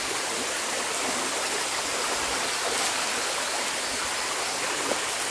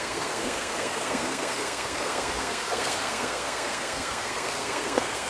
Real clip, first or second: first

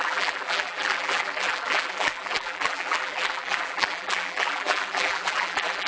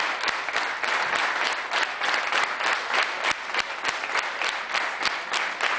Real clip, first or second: second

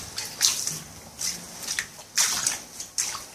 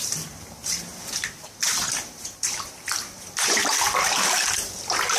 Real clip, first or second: first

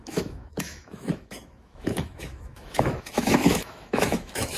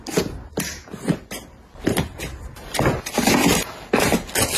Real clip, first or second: second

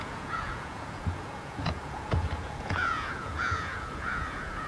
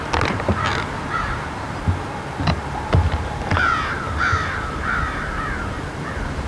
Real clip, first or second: second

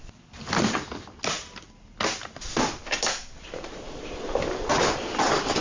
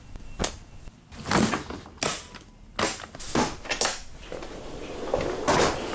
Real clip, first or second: second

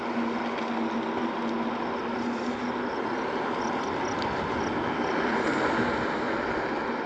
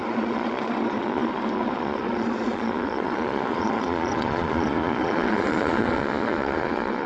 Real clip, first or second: first